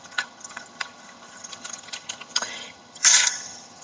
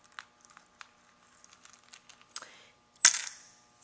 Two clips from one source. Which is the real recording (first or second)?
second